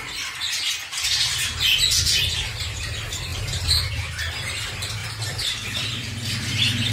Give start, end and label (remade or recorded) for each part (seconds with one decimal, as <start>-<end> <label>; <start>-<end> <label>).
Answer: 0.0-3.3 recorded; 3.3-4.0 remade; 4.0-5.0 recorded; 5.0-6.5 remade; 6.5-6.9 recorded